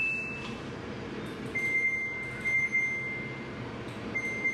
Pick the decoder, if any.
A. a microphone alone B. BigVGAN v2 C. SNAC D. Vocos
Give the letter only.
A